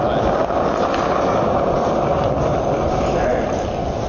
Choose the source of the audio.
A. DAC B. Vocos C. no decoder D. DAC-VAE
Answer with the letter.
C